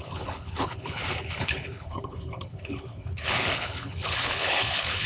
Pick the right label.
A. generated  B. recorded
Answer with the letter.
A